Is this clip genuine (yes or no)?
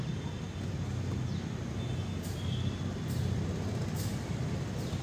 yes